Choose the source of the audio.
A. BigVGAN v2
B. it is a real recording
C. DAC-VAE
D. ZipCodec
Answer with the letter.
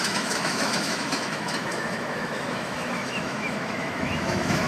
C